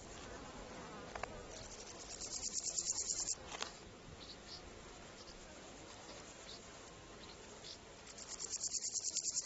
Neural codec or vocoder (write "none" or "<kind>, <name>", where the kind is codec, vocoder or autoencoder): none